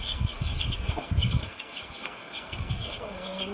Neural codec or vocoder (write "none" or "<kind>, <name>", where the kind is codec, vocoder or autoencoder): codec, SNAC